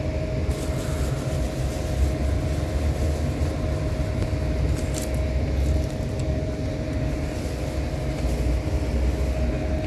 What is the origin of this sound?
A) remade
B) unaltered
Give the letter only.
B